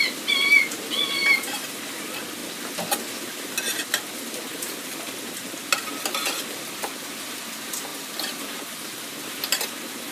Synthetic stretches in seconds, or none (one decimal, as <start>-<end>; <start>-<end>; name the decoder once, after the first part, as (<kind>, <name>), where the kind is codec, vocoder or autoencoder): 1.2-1.8 (vocoder, BigVGAN v2); 7.9-9.1